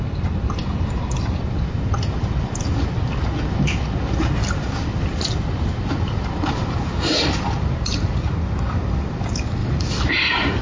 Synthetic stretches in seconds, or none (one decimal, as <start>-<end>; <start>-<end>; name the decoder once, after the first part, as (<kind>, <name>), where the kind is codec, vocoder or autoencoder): 5.1-8.3 (vocoder, BigVGAN v2); 9.6-10.6